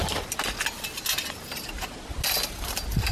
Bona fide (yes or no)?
yes